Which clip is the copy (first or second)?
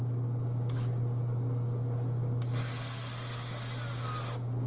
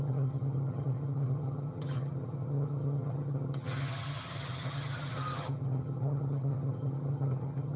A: second